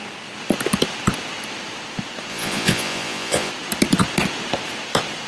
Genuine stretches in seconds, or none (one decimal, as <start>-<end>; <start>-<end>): 0.0-2.3; 3.5-5.3